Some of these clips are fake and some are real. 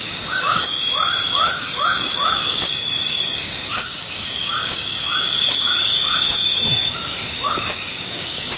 fake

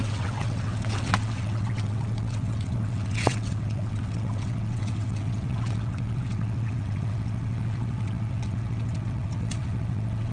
fake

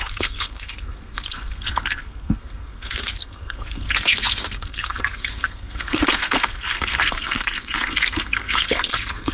fake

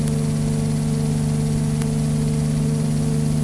real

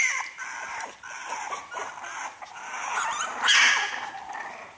real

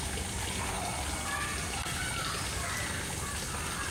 real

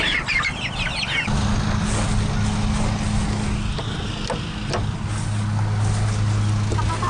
real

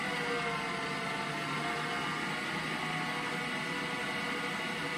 real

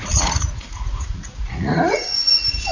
fake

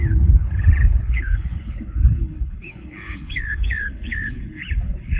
fake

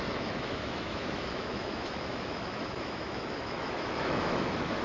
fake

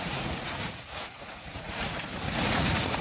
fake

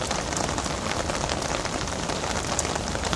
real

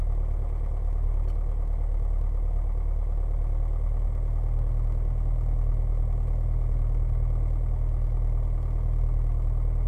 real